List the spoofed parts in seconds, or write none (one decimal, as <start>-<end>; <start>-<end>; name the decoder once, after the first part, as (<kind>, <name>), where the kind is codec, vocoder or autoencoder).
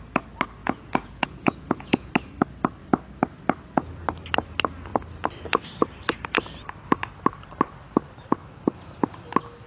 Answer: 0.6-2.1 (vocoder, Vocos)